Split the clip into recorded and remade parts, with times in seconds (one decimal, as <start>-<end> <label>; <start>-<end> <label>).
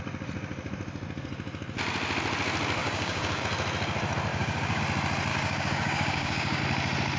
0.0-2.8 recorded; 2.8-3.4 remade; 3.4-4.3 recorded; 4.3-4.8 remade; 4.8-5.3 recorded; 5.3-6.6 remade; 6.6-7.2 recorded